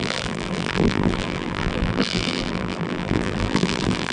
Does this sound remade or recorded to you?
remade